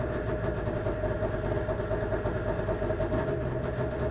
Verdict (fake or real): real